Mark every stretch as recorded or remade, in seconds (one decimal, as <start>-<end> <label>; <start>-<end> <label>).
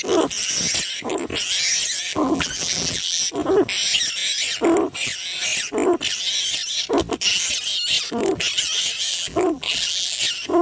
0.0-2.1 recorded; 2.1-3.2 remade; 3.2-9.1 recorded; 9.1-10.2 remade; 10.2-10.6 recorded